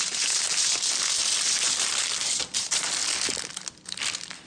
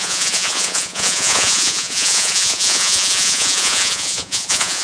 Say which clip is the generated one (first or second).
second